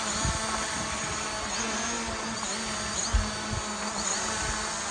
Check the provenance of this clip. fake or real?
real